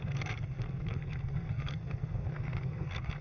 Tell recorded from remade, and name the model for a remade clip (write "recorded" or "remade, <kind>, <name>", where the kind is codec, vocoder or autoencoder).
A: remade, codec, SNAC